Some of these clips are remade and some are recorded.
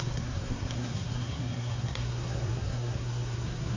remade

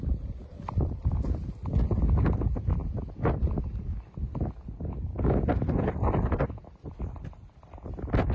recorded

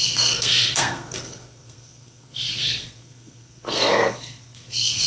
remade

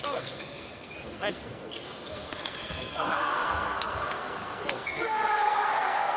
remade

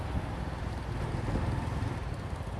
recorded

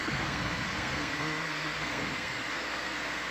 remade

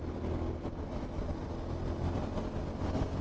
recorded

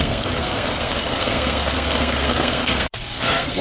remade